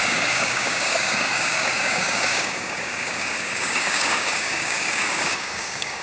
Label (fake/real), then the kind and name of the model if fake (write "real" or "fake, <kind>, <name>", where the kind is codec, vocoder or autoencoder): fake, codec, DAC